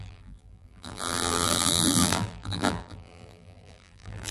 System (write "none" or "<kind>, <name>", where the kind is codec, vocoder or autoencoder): vocoder, BigVGAN v2